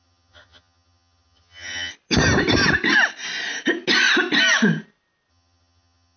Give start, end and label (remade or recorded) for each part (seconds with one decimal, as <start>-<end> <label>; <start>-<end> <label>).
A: 0.0-1.9 remade; 1.9-5.3 recorded; 5.3-6.2 remade